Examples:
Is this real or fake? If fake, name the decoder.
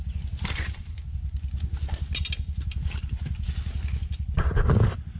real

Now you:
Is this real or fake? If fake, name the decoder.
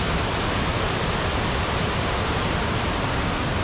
real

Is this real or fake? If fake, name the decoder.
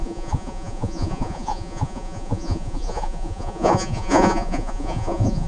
fake, vocoder, Vocos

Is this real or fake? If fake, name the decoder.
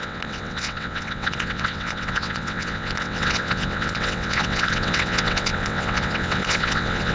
fake, vocoder, WaveNeXt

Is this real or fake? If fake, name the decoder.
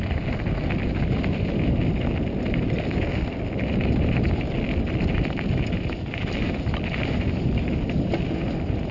real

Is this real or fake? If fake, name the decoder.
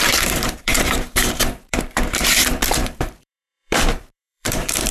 fake, vocoder, BigVGAN v2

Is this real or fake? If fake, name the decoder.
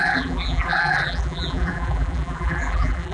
fake, vocoder, BigVGAN v2